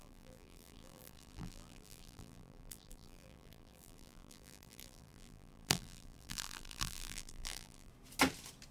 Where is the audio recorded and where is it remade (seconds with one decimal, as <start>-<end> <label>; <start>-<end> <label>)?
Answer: 0.0-7.9 remade; 7.9-8.7 recorded